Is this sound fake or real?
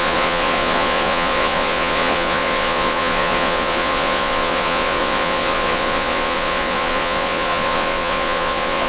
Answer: fake